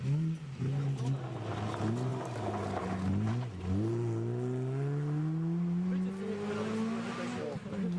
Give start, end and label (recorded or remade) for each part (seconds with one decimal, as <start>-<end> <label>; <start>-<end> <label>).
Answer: 0.0-8.0 recorded